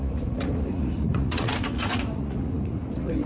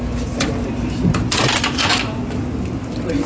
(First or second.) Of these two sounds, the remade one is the first